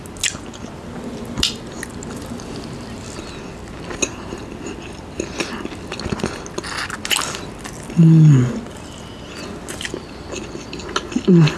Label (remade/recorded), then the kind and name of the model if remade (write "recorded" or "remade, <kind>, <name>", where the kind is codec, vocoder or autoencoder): recorded